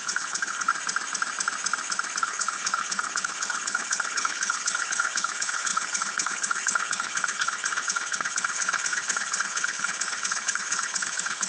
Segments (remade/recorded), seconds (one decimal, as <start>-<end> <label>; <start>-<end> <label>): 0.0-0.7 remade; 0.7-2.2 recorded; 2.2-11.5 remade

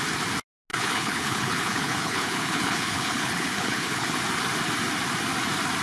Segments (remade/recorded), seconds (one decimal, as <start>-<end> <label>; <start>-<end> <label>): 0.0-0.7 recorded; 0.7-4.2 remade; 4.2-5.8 recorded